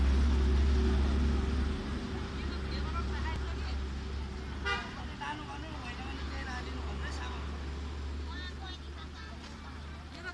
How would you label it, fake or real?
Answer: real